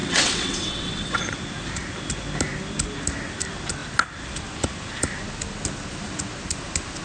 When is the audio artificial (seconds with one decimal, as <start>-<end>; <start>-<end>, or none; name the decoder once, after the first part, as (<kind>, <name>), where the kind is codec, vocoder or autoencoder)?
0.0-1.2 (vocoder, WaveNeXt)